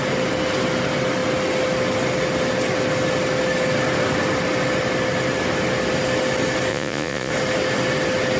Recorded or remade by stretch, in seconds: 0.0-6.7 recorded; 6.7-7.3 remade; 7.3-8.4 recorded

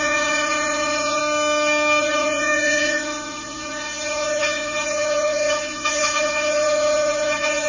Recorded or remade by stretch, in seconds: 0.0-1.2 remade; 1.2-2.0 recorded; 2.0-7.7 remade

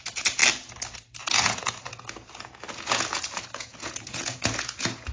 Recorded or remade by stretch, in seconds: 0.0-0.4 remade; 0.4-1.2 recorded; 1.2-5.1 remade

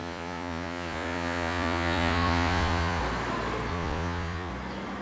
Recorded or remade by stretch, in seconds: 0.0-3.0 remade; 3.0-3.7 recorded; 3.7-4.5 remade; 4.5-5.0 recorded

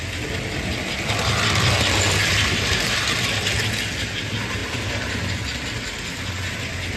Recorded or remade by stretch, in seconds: 0.0-7.0 recorded

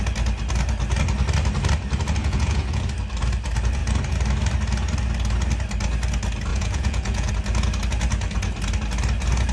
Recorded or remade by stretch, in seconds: 0.0-2.2 recorded; 2.2-2.8 remade; 2.8-6.5 recorded; 6.5-7.3 remade; 7.3-9.5 recorded